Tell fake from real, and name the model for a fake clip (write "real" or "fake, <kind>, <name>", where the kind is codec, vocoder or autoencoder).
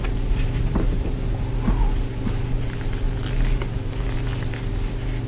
real